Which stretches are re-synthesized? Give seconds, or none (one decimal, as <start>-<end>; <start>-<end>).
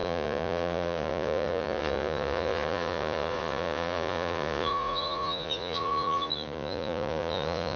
0.0-7.8